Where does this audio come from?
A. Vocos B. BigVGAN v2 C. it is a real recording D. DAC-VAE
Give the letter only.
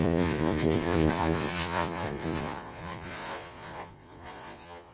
A